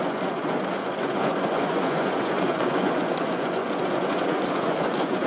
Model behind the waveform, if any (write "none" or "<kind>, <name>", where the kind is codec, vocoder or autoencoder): vocoder, Vocos